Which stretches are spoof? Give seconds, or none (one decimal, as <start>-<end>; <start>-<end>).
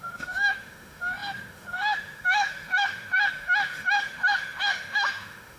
0.0-5.6